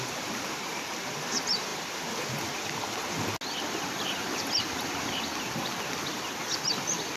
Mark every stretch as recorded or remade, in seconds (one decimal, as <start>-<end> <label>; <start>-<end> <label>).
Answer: 0.0-7.2 recorded